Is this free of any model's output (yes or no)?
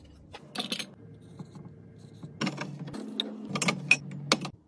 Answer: yes